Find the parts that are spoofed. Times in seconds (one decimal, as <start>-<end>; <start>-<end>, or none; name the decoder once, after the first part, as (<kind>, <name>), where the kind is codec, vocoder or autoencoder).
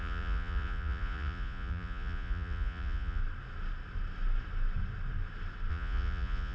0.0-3.2 (vocoder, Vocos); 5.7-6.5